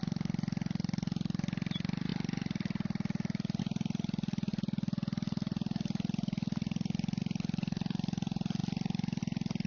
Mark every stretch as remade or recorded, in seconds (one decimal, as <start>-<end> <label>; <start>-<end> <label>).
0.0-9.7 recorded

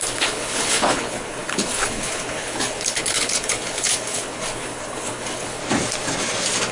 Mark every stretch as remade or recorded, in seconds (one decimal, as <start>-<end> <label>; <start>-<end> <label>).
0.0-5.6 remade; 5.6-6.7 recorded

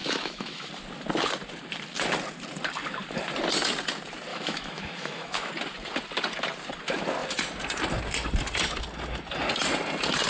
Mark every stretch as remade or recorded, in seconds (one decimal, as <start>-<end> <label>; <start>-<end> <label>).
0.0-0.7 remade; 0.7-4.3 recorded; 4.3-5.5 remade; 5.5-10.3 recorded

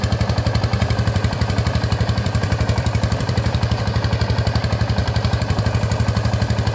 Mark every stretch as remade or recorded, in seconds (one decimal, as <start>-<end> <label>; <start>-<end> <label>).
0.0-0.7 recorded; 0.7-3.8 remade; 3.8-5.0 recorded; 5.0-5.6 remade; 5.6-6.7 recorded

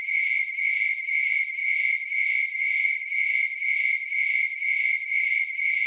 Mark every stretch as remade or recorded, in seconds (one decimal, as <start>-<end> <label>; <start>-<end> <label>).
0.0-1.6 remade; 1.6-5.1 recorded; 5.1-5.9 remade

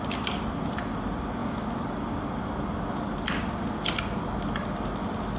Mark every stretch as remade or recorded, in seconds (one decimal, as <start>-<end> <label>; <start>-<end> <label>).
0.0-5.4 recorded